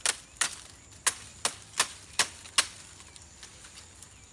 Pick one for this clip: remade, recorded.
recorded